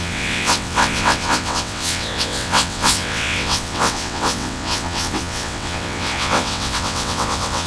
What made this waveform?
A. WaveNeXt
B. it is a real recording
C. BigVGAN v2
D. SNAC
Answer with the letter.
A